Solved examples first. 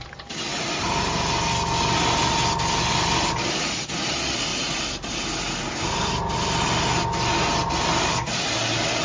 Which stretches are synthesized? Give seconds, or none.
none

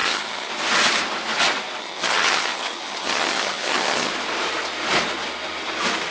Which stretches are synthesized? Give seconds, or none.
0.0-0.5 (vocoder, HiFi-GAN); 1.8-4.1

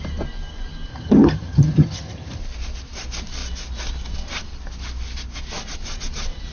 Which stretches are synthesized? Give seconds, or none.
0.9-2.4 (vocoder, HiFi-GAN)

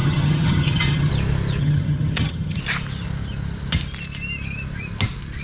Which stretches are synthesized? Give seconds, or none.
0.0-1.1 (vocoder, HiFi-GAN); 1.6-2.6

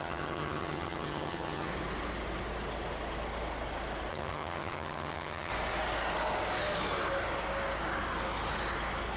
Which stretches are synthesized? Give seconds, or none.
0.0-1.7 (vocoder, HiFi-GAN); 4.1-5.5